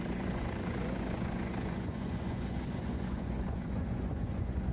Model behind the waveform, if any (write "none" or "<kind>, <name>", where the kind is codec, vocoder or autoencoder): vocoder, Vocos